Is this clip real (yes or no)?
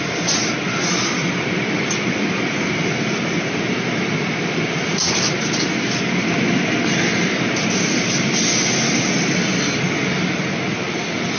yes